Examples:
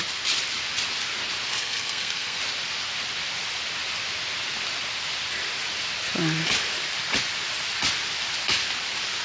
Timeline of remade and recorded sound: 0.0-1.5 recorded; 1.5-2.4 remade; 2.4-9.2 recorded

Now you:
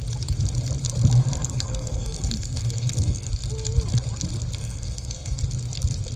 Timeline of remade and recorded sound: 0.0-1.4 recorded; 1.4-3.3 remade; 3.3-4.6 recorded; 4.6-5.4 remade; 5.4-6.2 recorded

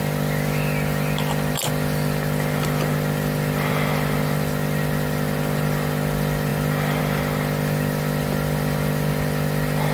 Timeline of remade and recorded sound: 0.0-9.9 recorded

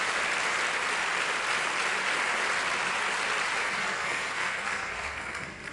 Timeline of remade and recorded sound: 0.0-3.6 recorded; 3.6-5.7 remade

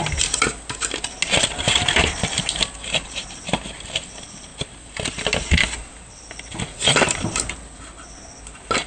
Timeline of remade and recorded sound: 0.0-8.9 recorded